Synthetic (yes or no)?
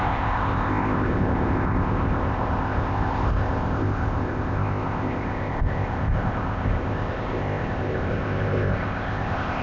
yes